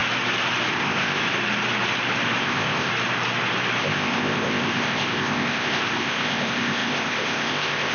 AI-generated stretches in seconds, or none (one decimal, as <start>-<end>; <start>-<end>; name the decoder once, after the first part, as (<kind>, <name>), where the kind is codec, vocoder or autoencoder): 0.7-1.2 (codec, ZipCodec); 2.4-2.9; 3.8-7.9